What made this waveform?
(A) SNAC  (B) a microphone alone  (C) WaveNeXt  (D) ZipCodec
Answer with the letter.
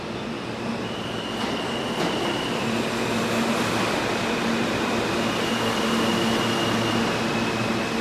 B